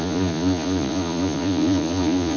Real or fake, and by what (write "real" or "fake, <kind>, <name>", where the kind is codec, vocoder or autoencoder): fake, vocoder, Vocos